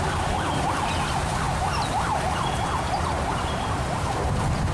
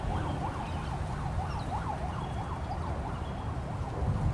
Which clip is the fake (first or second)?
first